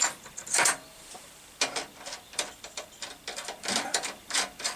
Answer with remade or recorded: remade